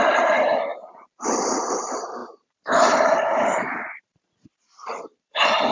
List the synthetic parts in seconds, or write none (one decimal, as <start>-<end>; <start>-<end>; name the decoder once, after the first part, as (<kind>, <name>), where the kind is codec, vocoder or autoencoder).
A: 0.0-0.7 (vocoder, BigVGAN v2); 1.6-5.7